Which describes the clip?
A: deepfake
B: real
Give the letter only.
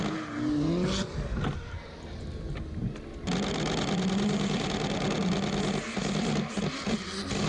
B